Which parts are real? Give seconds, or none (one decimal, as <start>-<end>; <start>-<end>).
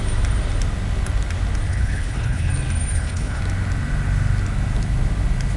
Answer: 0.0-1.7; 2.5-2.9; 3.4-5.6